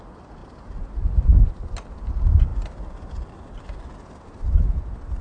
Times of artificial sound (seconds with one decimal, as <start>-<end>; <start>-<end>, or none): none